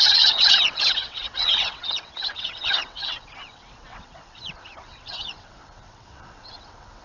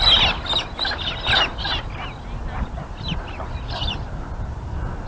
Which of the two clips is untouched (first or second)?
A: second